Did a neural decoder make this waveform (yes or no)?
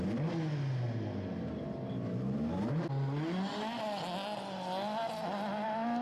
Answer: no